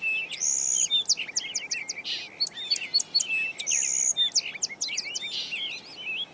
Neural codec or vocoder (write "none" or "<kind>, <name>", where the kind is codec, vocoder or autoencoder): none